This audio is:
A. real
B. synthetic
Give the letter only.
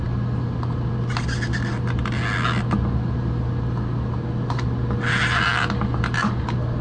A